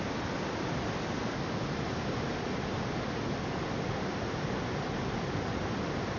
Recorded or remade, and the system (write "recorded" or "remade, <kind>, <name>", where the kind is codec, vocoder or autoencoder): remade, vocoder, BigVGAN v2